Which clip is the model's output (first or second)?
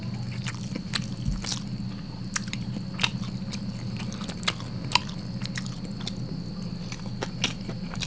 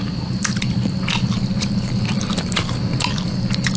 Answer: second